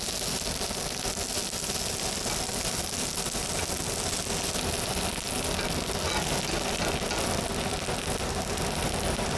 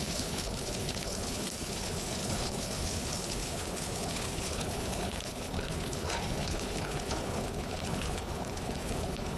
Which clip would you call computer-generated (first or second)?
second